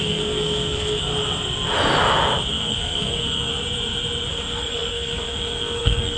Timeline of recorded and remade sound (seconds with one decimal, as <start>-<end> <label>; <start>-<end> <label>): 0.0-1.1 remade; 1.1-2.5 recorded; 2.5-3.5 remade; 3.5-4.3 recorded; 4.3-6.2 remade